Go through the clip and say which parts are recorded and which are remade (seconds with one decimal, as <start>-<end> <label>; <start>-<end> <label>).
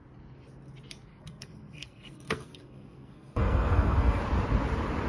0.0-1.1 recorded; 1.1-4.2 remade; 4.2-5.1 recorded